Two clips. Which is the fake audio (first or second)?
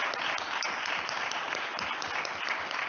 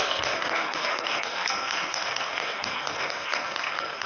second